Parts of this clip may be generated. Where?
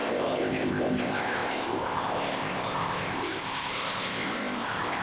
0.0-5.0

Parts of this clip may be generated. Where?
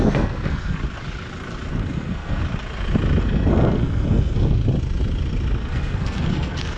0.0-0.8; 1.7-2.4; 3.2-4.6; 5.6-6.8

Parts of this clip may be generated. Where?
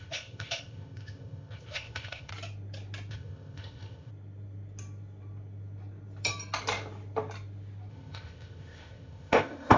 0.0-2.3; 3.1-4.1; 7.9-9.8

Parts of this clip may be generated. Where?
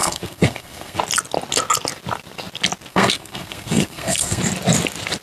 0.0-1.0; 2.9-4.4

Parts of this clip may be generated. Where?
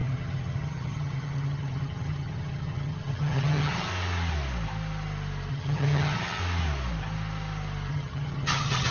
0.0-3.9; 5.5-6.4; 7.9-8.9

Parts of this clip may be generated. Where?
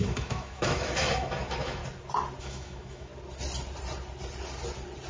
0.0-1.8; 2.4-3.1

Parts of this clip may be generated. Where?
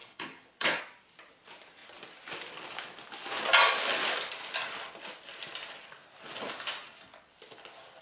0.0-0.8